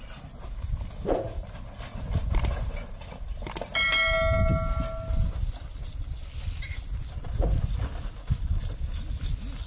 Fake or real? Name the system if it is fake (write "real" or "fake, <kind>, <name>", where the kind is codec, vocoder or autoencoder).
real